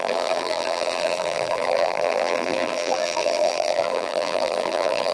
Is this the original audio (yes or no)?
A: no